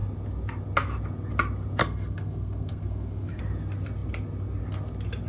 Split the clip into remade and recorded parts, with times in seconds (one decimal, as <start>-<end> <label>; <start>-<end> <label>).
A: 0.0-1.8 recorded; 1.8-3.4 remade; 3.4-5.3 recorded